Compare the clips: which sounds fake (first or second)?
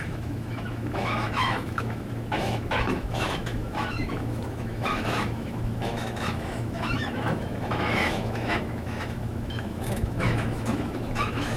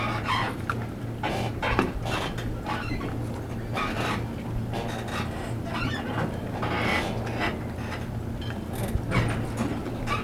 first